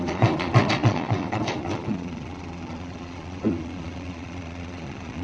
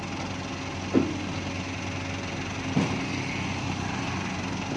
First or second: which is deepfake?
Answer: first